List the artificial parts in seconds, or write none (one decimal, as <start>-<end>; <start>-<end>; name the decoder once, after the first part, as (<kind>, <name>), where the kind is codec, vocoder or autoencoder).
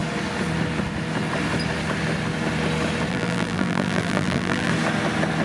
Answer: 3.1-4.7 (vocoder, BigVGAN v2)